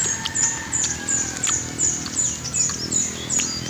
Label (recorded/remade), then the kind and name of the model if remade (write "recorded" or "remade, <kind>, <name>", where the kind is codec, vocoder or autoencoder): recorded